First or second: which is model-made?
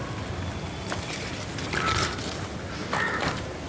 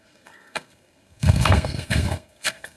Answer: second